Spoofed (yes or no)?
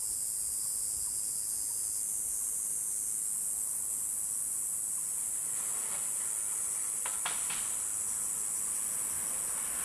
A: no